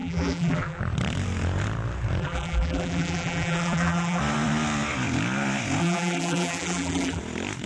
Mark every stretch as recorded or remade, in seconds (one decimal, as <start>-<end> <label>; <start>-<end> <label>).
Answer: 0.0-0.8 remade; 0.8-2.2 recorded; 2.2-4.2 remade; 4.2-5.8 recorded; 5.8-7.2 remade; 7.2-7.7 recorded

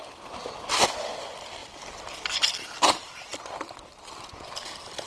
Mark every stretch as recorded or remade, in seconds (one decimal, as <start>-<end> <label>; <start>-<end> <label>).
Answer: 0.0-5.1 recorded

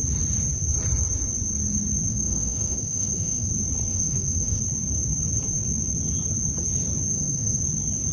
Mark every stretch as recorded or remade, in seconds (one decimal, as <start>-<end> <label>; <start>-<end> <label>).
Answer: 0.0-2.1 recorded; 2.1-3.5 remade; 3.5-3.9 recorded; 3.9-4.6 remade; 4.6-7.1 recorded; 7.1-7.6 remade; 7.6-8.1 recorded

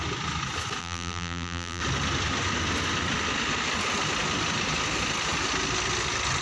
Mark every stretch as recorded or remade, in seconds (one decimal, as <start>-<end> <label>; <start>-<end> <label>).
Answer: 0.0-0.8 recorded; 0.8-1.8 remade; 1.8-6.4 recorded

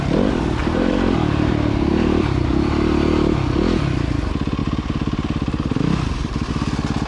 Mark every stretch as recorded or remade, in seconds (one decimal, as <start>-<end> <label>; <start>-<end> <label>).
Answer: 0.0-0.6 recorded; 0.6-1.5 remade; 1.5-1.9 recorded; 1.9-2.5 remade; 2.5-4.6 recorded; 4.6-6.5 remade; 6.5-7.1 recorded

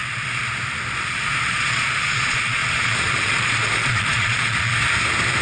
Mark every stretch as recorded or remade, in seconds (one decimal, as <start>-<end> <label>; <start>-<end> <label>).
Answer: 0.0-1.5 recorded; 1.5-4.7 remade; 4.7-5.4 recorded